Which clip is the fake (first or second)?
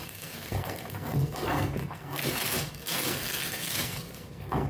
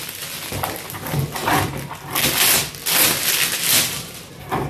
first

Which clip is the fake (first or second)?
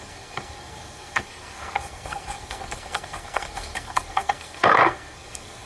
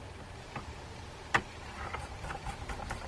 first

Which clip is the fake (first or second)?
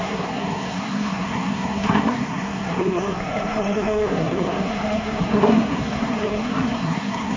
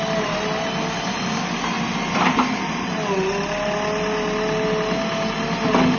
first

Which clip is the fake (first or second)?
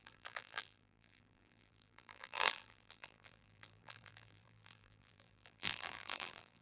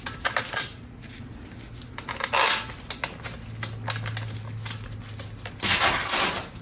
first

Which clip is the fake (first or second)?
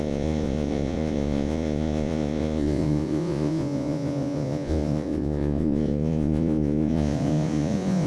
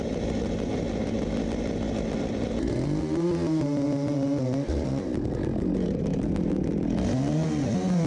first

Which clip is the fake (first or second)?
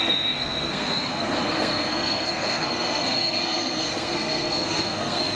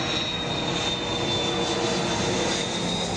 first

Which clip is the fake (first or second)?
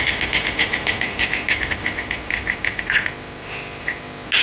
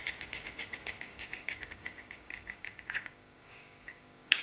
second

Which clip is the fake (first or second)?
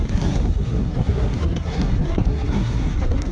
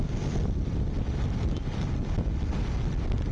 first